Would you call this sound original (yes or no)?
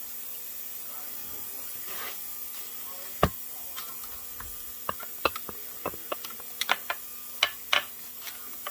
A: yes